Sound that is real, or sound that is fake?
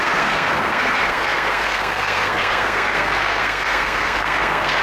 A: fake